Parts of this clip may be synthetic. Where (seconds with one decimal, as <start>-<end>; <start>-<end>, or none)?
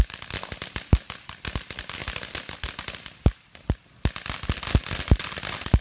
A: none